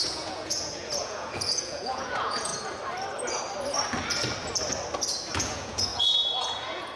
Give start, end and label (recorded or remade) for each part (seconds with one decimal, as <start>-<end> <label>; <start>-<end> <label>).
0.0-2.5 remade; 2.5-5.3 recorded; 5.3-7.0 remade